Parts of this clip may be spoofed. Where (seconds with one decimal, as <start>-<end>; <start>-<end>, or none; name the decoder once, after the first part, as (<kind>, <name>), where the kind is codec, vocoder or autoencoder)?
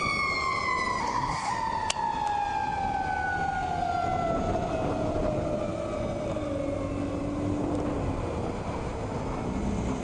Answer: 1.0-1.5 (codec, SNAC)